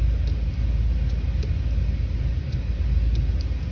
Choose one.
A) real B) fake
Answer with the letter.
A